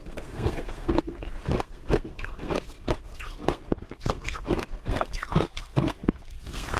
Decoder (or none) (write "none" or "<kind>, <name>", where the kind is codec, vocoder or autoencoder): codec, SNAC